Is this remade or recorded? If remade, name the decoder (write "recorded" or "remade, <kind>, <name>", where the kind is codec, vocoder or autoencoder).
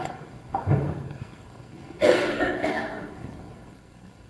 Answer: remade, codec, SNAC